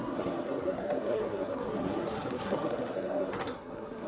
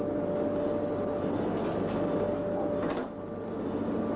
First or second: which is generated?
first